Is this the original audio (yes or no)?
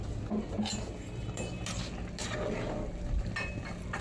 yes